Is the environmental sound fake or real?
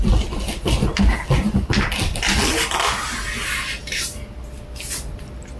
real